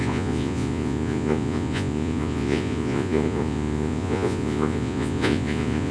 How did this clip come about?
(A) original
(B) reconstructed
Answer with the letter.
B